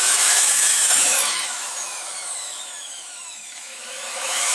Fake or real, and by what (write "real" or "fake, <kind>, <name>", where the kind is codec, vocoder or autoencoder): fake, autoencoder, DAC-VAE